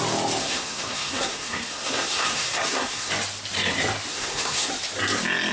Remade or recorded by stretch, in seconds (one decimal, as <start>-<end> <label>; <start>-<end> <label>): 0.0-0.4 recorded; 0.4-3.1 remade; 3.1-4.1 recorded; 4.1-4.7 remade; 4.7-5.5 recorded